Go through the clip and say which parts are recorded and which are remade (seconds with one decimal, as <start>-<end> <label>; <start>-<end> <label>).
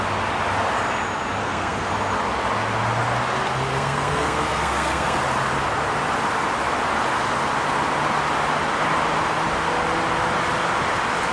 0.0-1.4 recorded; 1.4-1.9 remade; 1.9-3.7 recorded; 3.7-5.2 remade; 5.2-11.3 recorded